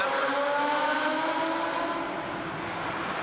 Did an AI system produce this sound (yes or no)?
no